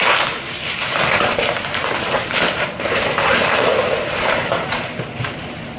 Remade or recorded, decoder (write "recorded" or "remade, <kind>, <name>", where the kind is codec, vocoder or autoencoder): remade, vocoder, BigVGAN v2